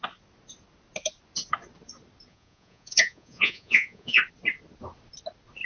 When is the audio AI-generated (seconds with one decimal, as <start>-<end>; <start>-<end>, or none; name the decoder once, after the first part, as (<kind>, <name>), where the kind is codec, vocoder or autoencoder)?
2.3-4.2 (vocoder, Vocos)

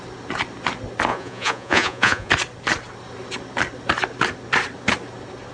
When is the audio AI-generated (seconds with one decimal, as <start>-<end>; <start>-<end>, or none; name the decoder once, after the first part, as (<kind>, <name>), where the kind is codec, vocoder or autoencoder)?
1.1-2.3 (vocoder, Vocos)